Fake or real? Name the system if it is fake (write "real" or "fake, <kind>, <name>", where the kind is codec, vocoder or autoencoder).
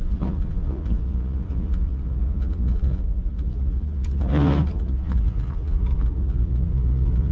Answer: fake, vocoder, Vocos